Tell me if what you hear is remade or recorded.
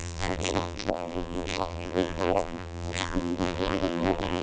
remade